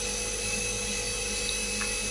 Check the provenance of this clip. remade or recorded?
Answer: recorded